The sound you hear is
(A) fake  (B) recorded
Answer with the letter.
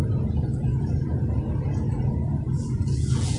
A